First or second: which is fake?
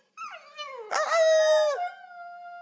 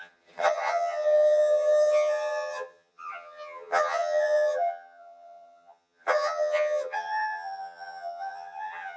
second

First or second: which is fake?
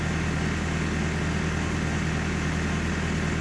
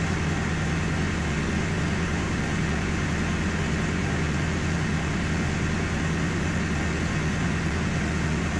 second